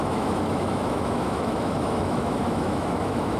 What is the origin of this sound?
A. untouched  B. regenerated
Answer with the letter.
B